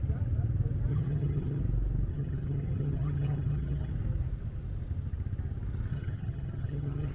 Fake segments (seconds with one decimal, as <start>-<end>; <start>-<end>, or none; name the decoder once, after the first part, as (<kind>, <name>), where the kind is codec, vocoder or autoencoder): 0.9-1.6 (vocoder, HiFi-GAN); 2.1-3.9; 5.9-7.1